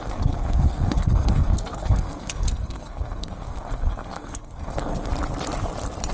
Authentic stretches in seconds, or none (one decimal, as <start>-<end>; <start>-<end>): 5.1-6.1